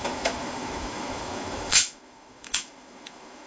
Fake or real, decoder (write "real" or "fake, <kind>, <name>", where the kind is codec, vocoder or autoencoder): fake, autoencoder, DAC-VAE